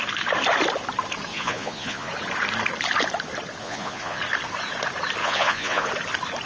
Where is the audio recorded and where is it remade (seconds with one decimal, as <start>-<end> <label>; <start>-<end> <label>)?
0.0-1.3 recorded; 1.3-2.1 remade; 2.1-3.6 recorded; 3.6-4.2 remade; 4.2-5.2 recorded; 5.2-5.9 remade; 5.9-6.5 recorded

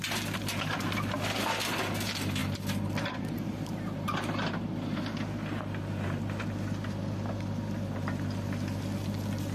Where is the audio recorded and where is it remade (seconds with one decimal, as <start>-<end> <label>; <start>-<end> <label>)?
0.0-9.5 recorded

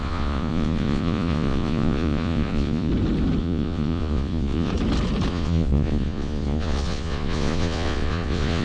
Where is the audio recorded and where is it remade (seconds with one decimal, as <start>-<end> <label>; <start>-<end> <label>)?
0.0-2.9 remade; 2.9-3.4 recorded; 3.4-4.7 remade; 4.7-5.3 recorded; 5.3-8.6 remade

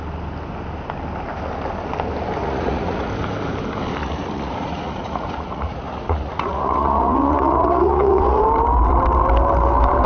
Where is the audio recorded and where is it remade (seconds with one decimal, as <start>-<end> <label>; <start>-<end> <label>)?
0.0-2.4 recorded; 2.4-3.1 remade; 3.1-4.0 recorded; 4.0-8.4 remade; 8.4-10.1 recorded

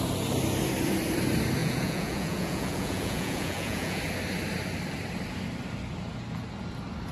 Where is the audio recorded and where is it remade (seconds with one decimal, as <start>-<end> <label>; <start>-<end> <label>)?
0.0-1.6 recorded; 1.6-4.0 remade; 4.0-7.1 recorded

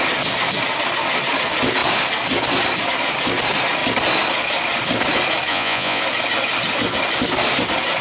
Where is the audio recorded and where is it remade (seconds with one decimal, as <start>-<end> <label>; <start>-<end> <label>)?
0.0-5.5 recorded; 5.5-6.0 remade; 6.0-8.0 recorded

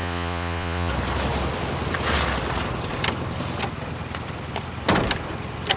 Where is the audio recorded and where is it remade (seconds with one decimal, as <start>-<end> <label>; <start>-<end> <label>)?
0.0-0.9 remade; 0.9-5.8 recorded